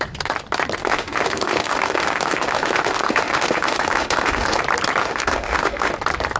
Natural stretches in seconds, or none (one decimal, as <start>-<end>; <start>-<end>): 0.0-0.8; 4.6-5.0; 5.9-6.4